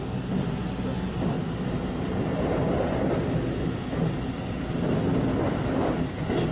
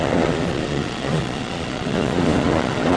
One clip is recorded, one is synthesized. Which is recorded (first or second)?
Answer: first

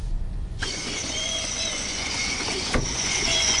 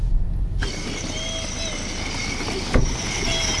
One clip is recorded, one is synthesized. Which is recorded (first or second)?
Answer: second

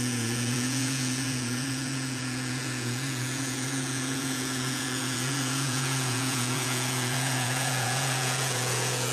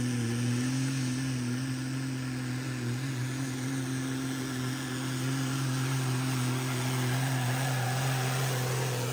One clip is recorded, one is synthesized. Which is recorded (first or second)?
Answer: second